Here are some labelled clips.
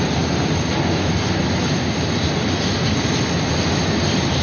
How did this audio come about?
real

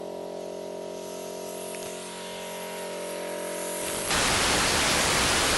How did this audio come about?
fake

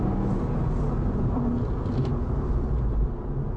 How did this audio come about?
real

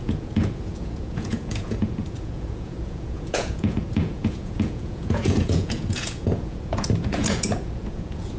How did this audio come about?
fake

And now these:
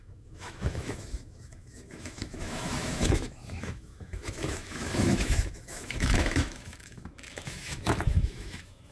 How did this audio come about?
fake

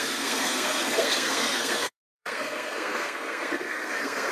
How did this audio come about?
fake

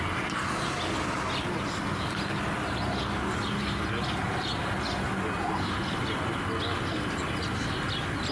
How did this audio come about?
real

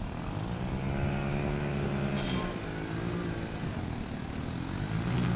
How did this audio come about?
real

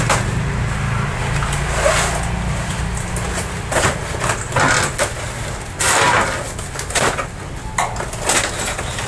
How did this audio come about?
real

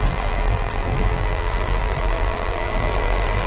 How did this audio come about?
fake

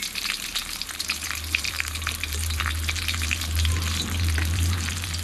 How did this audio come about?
fake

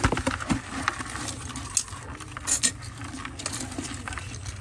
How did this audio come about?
real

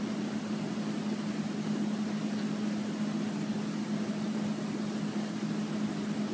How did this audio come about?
real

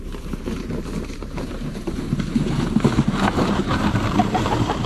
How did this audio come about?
fake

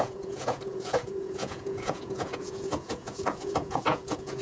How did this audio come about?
fake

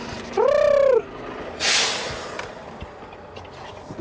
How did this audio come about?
real